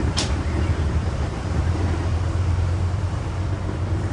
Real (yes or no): no